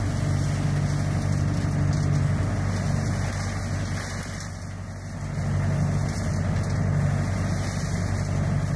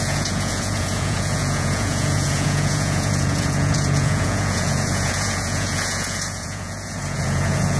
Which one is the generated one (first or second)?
second